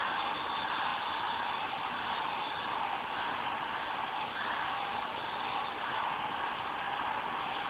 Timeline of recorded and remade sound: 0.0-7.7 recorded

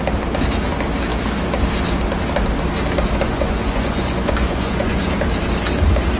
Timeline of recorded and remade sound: 0.0-3.2 recorded; 3.2-5.0 remade; 5.0-6.2 recorded

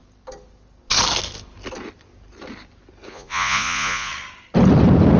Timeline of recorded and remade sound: 0.0-3.1 recorded; 3.1-4.1 remade; 4.1-5.2 recorded

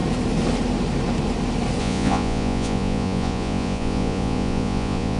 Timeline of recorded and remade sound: 0.0-1.8 recorded; 1.8-5.2 remade

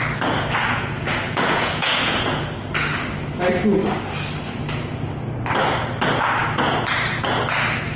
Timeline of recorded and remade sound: 0.0-0.6 recorded; 0.6-2.4 remade; 2.4-8.0 recorded